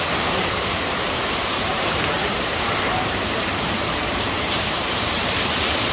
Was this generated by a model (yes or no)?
yes